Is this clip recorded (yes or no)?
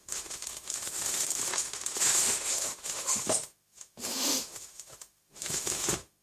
no